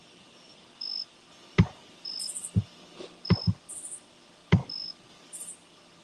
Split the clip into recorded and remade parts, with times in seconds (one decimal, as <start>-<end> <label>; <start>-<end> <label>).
0.0-6.0 recorded